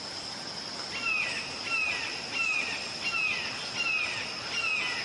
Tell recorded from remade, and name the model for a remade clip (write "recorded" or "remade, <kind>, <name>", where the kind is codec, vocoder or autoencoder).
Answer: recorded